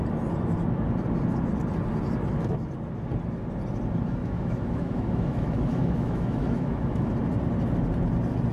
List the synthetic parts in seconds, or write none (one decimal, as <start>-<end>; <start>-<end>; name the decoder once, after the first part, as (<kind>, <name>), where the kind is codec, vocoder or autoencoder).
4.2-7.1 (autoencoder, DAC-VAE)